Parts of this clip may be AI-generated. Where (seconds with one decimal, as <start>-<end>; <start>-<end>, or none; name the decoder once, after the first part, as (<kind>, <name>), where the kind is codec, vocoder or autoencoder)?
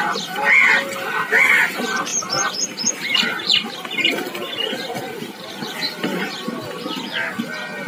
none